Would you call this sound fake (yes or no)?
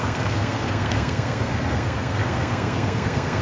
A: yes